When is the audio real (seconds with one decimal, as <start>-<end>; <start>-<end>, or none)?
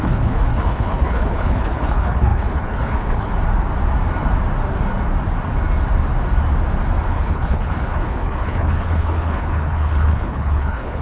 3.3-7.1